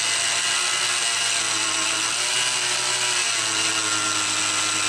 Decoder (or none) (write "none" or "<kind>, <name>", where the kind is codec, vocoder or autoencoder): none